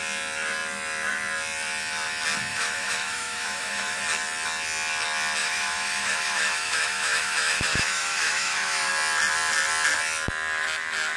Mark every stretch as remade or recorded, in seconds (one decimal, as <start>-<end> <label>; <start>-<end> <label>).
0.0-2.5 recorded; 2.5-4.0 remade; 4.0-5.4 recorded; 5.4-8.9 remade; 8.9-11.2 recorded